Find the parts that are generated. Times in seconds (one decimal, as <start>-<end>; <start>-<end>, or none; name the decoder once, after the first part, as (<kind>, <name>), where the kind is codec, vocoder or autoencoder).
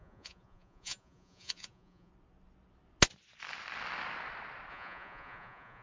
0.0-2.1 (vocoder, Vocos); 4.7-5.8